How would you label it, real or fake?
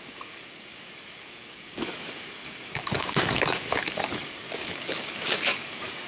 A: fake